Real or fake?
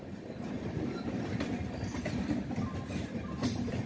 real